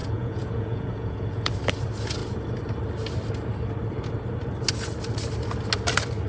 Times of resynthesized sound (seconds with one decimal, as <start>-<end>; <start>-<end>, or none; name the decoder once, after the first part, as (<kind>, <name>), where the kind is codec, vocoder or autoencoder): 0.0-1.5 (vocoder, Vocos)